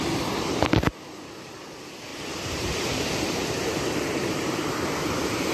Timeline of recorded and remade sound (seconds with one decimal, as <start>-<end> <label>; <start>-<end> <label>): 0.0-2.1 recorded; 2.1-5.5 remade